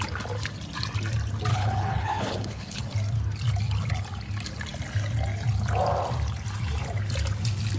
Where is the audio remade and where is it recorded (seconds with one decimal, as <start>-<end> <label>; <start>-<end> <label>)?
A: 0.0-1.5 recorded; 1.5-2.8 remade; 2.8-7.8 recorded